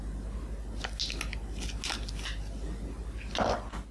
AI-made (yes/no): no